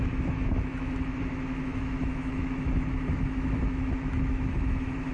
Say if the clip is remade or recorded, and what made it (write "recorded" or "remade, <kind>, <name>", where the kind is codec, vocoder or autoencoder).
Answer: remade, autoencoder, DAC-VAE